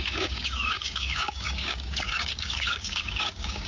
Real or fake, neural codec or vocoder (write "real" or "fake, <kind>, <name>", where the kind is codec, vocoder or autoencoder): fake, codec, DAC